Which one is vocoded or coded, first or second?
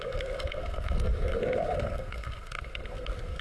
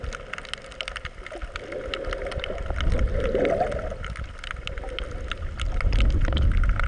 first